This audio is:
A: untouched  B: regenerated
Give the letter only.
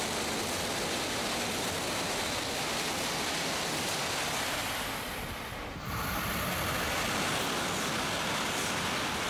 A